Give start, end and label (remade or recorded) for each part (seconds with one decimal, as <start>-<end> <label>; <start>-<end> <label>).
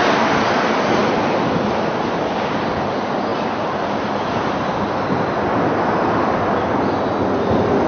0.0-7.9 recorded